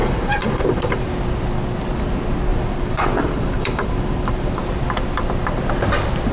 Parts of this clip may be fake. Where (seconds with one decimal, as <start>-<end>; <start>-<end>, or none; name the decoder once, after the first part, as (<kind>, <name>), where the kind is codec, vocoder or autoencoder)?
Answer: 0.0-1.1 (vocoder, BigVGAN v2); 2.5-4.6